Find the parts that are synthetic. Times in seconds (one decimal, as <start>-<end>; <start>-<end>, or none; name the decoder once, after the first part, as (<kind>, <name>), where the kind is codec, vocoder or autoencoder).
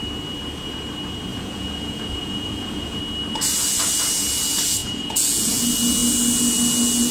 1.3-3.0 (vocoder, Vocos); 4.8-5.6